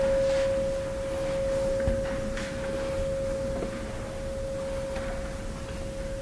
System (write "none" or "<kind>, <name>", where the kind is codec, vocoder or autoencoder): none